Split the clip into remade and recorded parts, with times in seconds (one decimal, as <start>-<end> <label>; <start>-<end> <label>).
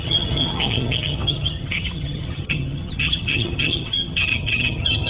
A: 0.0-5.1 remade